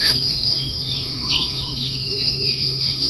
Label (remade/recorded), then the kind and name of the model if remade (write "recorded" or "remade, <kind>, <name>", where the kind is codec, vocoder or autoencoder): remade, autoencoder, DAC-VAE